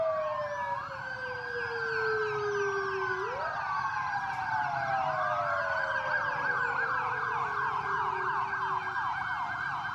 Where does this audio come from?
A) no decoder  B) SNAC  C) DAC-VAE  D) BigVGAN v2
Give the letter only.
A